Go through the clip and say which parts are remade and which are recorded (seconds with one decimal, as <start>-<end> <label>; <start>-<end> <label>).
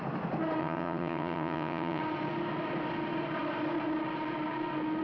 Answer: 0.0-0.6 recorded; 0.6-2.0 remade; 2.0-5.0 recorded